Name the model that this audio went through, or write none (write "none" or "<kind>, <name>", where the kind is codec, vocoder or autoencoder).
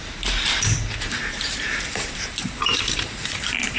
vocoder, BigVGAN v2